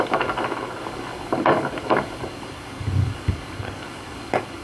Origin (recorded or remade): remade